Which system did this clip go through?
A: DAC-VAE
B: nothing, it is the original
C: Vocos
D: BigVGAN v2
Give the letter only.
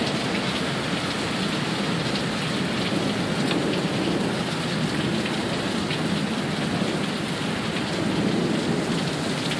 B